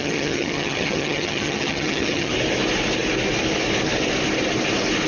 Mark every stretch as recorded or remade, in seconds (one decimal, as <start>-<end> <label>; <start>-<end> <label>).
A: 0.0-2.3 remade; 2.3-5.1 recorded